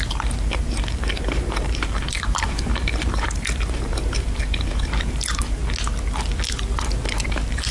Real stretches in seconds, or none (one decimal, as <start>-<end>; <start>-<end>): 5.6-6.5